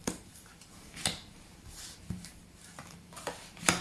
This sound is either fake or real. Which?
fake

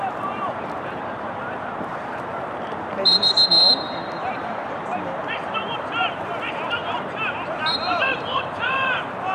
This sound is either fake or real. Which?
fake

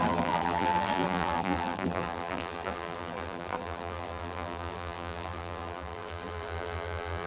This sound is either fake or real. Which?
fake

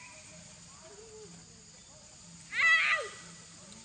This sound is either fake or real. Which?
real